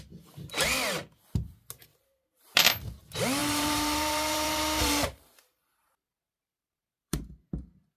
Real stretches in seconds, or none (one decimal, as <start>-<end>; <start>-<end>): 0.0-1.9; 2.7-3.4; 7.2-8.0